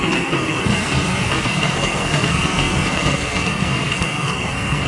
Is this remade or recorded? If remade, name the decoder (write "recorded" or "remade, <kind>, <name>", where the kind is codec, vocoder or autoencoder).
remade, codec, SNAC